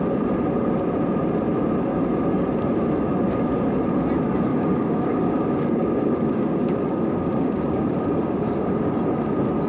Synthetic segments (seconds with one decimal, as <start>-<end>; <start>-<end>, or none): 4.5-8.7